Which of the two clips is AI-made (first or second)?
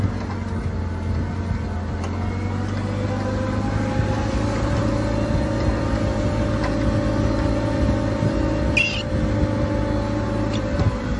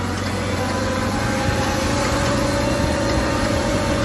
second